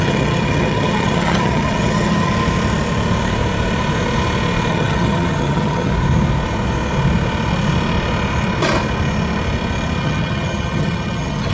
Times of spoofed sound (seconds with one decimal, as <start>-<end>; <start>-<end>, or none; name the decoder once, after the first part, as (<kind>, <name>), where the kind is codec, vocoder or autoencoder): 0.0-2.3 (vocoder, HiFi-GAN); 4.7-5.9; 10.0-11.5